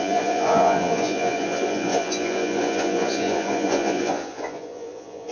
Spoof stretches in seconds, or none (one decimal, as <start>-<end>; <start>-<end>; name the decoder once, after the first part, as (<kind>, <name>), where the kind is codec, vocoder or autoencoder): 0.0-5.3 (vocoder, Vocos)